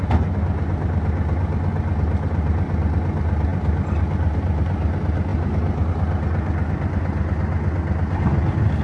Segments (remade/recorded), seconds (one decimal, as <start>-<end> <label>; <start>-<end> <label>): 0.0-8.8 recorded